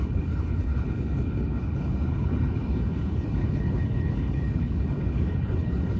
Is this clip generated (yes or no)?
yes